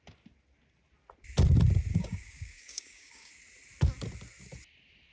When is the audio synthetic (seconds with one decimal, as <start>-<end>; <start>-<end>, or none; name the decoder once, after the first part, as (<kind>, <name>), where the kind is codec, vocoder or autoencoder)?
1.9-3.3 (codec, DAC)